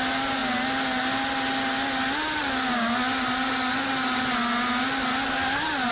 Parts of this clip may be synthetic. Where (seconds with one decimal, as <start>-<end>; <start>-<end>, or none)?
none